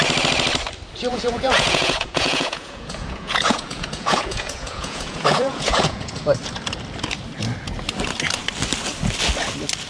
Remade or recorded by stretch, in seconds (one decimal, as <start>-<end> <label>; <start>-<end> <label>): 0.0-1.1 recorded; 1.1-6.2 remade; 6.2-9.9 recorded